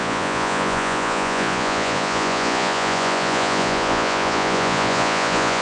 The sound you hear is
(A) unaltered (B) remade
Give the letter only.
B